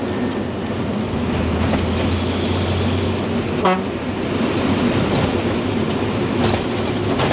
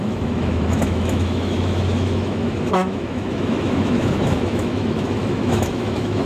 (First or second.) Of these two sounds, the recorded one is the first